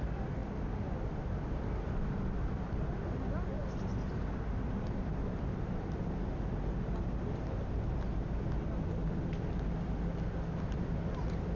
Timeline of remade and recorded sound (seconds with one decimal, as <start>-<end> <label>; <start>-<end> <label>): 0.0-11.6 recorded